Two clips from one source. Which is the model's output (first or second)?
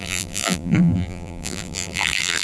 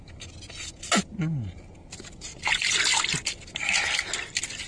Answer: first